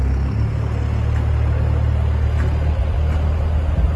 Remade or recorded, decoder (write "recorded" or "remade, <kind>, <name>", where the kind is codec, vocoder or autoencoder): recorded